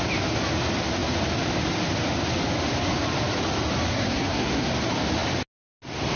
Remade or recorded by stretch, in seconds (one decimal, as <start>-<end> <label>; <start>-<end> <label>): 0.0-3.9 recorded; 3.9-4.7 remade; 4.7-6.2 recorded